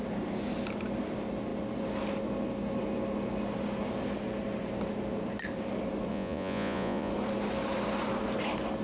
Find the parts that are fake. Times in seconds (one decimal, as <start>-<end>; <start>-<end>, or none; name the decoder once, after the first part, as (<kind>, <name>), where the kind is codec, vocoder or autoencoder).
6.1-7.1 (vocoder, Vocos)